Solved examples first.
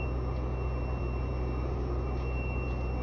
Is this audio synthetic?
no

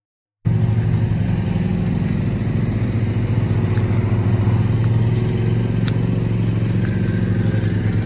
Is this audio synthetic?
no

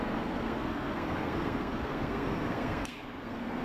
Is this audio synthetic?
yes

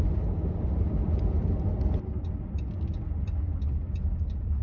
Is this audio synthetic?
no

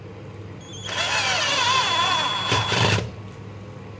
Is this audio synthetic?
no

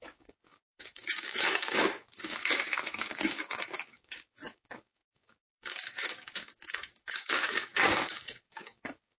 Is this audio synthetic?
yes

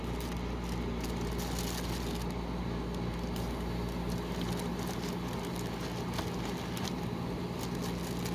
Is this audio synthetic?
no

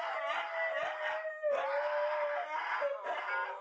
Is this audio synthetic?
no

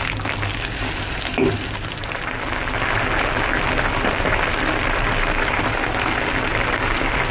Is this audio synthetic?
no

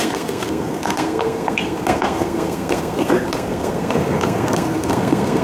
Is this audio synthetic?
yes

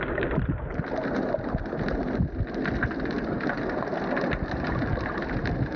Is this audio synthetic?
no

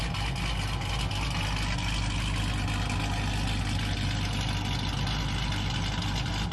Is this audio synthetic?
no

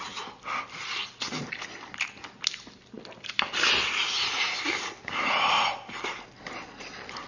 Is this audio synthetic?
no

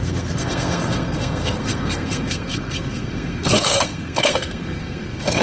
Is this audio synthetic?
yes